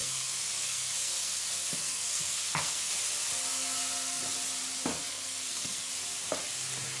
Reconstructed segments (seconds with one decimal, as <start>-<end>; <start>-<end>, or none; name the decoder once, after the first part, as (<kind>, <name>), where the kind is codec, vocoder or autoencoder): 0.0-2.9 (codec, SNAC); 3.5-4.2; 4.9-5.9